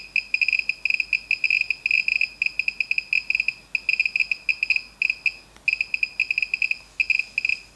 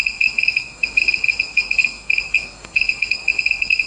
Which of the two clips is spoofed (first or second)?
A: second